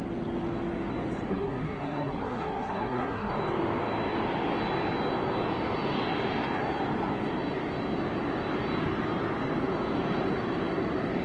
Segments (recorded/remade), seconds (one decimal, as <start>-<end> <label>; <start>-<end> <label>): 0.0-1.3 recorded; 1.3-3.3 remade; 3.3-11.2 recorded